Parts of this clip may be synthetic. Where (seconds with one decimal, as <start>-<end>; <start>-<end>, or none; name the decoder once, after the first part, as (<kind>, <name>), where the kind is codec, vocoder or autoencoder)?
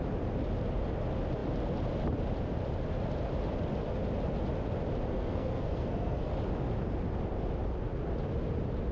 5.1-6.3 (codec, SNAC)